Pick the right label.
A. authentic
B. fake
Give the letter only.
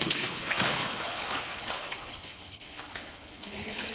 B